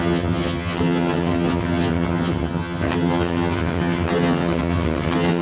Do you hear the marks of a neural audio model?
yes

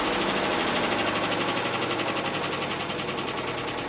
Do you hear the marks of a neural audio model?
no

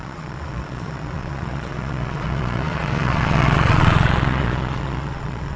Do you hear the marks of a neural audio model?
yes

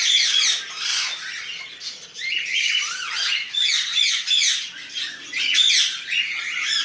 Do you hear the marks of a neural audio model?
no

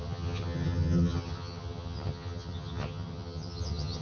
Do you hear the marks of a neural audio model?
yes